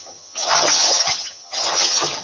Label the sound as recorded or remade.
remade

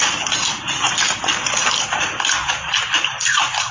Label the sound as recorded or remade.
recorded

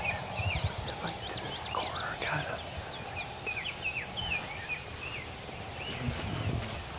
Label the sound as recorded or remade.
recorded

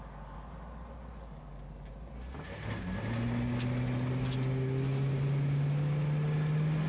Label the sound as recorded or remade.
recorded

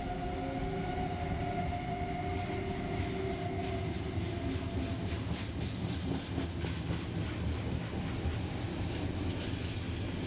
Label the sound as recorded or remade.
recorded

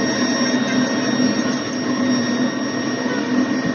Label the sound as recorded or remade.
recorded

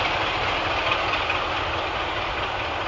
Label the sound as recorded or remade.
recorded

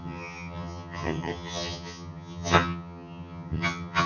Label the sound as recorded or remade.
remade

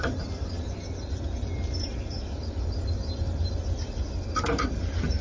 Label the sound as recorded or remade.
recorded